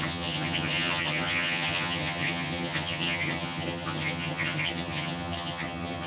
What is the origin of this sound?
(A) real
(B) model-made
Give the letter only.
B